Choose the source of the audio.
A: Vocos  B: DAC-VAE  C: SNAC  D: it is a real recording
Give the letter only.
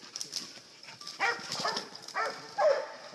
D